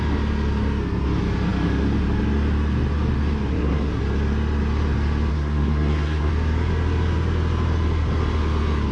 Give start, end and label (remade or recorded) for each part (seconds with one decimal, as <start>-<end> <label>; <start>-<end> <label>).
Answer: 0.0-3.5 recorded; 3.5-4.0 remade; 4.0-5.3 recorded; 5.3-6.3 remade; 6.3-8.9 recorded